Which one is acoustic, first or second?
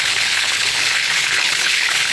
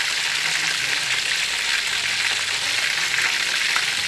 second